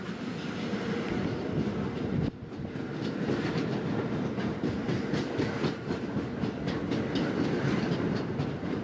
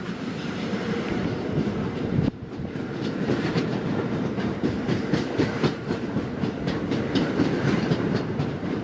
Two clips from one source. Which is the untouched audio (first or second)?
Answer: first